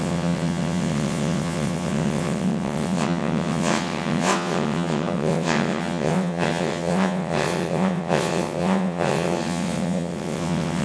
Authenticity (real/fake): fake